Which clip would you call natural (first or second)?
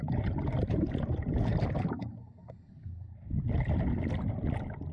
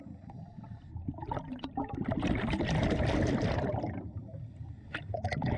first